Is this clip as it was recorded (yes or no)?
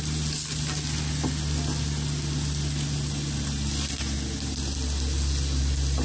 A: yes